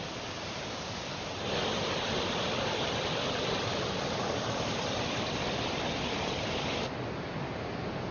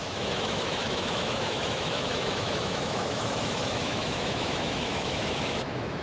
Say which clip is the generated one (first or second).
second